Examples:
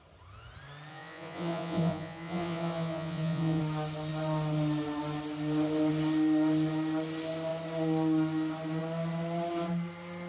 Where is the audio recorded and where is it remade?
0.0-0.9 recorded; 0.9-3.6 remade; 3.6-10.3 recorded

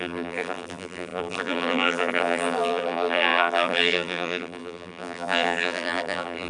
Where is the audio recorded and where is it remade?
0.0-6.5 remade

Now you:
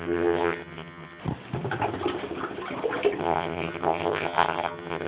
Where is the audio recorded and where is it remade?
0.0-1.2 remade; 1.2-3.2 recorded; 3.2-5.1 remade